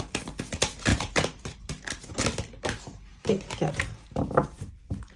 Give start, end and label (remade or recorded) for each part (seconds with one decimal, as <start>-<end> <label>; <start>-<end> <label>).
0.0-0.9 recorded; 0.9-1.6 remade; 1.6-5.2 recorded